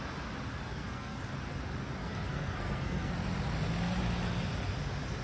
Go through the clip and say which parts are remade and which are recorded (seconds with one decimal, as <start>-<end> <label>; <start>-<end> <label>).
0.0-0.7 recorded; 0.7-1.2 remade; 1.2-2.0 recorded; 2.0-3.1 remade; 3.1-5.2 recorded